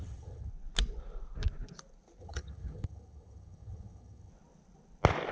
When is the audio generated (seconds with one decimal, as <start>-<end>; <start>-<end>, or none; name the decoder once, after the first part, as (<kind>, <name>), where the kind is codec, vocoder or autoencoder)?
0.0-0.5 (vocoder, HiFi-GAN); 2.2-4.3